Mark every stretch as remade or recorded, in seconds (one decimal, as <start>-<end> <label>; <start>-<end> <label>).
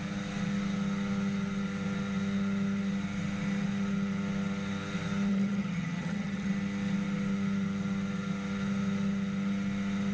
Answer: 0.0-5.3 recorded; 5.3-6.5 remade; 6.5-10.1 recorded